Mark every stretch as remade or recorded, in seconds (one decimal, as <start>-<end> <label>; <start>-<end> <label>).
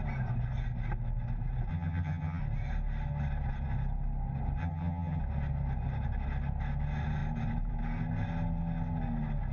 0.0-1.7 recorded; 1.7-2.4 remade; 2.4-4.6 recorded; 4.6-5.2 remade; 5.2-9.5 recorded